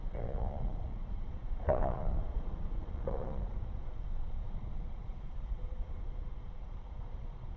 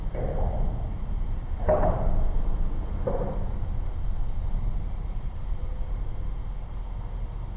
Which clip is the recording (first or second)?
second